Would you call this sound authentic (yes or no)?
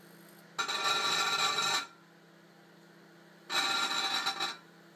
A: yes